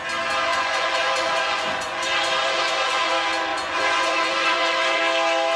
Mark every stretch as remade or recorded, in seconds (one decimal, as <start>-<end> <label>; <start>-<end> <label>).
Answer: 0.0-0.5 recorded; 0.5-3.1 remade; 3.1-3.5 recorded; 3.5-5.0 remade; 5.0-5.6 recorded